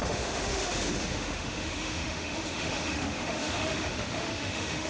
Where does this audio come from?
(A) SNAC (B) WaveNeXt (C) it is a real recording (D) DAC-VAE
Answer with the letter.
D